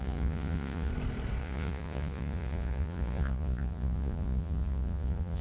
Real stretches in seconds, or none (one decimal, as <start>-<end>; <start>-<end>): 0.9-1.4